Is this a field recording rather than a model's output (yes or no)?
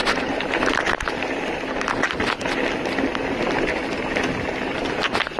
yes